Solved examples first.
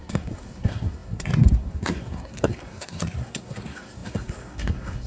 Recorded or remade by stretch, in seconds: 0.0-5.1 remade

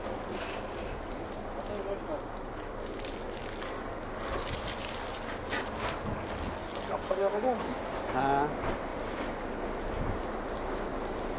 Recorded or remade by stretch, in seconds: 0.0-6.6 recorded; 6.6-7.7 remade; 7.7-11.4 recorded

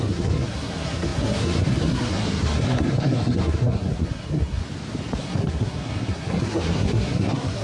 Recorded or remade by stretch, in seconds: 0.0-4.6 remade; 4.6-5.2 recorded; 5.2-7.6 remade

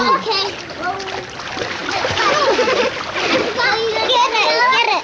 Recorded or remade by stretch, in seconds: 0.0-5.0 recorded

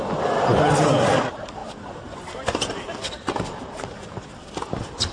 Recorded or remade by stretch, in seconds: 0.0-5.1 recorded

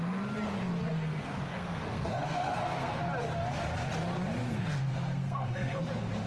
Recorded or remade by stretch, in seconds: 0.0-0.8 recorded; 0.8-3.0 remade; 3.0-4.4 recorded; 4.4-5.8 remade; 5.8-6.3 recorded

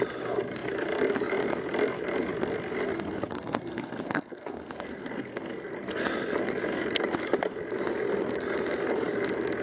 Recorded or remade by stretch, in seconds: 0.0-2.9 recorded; 2.9-5.7 remade; 5.7-9.6 recorded

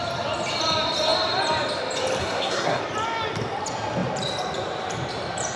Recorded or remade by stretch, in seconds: 0.0-2.2 recorded; 2.2-2.8 remade; 2.8-5.6 recorded